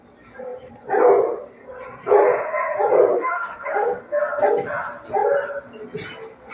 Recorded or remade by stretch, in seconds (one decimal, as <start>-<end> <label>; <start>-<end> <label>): 0.0-3.1 recorded; 3.1-4.0 remade; 4.0-6.5 recorded